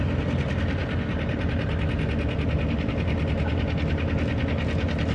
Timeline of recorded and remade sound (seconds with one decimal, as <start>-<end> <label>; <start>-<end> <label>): 0.0-5.1 recorded